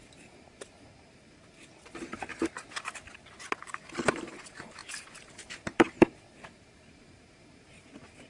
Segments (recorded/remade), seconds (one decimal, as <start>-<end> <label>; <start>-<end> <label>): 0.0-2.3 remade; 2.3-4.1 recorded; 4.1-8.3 remade